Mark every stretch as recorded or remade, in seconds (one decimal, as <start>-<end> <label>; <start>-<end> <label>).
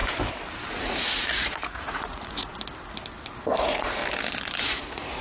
0.0-0.7 recorded; 0.7-2.5 remade; 2.5-3.6 recorded; 3.6-4.0 remade; 4.0-4.6 recorded; 4.6-5.2 remade